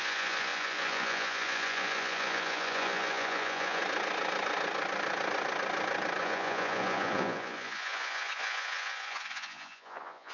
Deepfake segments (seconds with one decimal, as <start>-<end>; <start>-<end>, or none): 0.0-3.8; 6.2-10.3